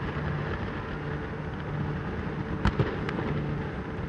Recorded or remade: recorded